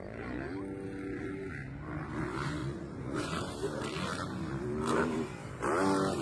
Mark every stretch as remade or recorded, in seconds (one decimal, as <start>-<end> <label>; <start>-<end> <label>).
0.0-2.6 recorded; 2.6-3.5 remade; 3.5-6.2 recorded